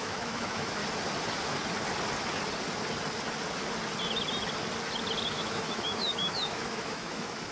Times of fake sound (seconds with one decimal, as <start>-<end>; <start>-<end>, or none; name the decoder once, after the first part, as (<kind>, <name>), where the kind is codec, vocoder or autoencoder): 0.0-0.8 (autoencoder, DAC-VAE); 5.3-7.5